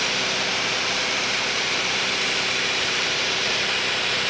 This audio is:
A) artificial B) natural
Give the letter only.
A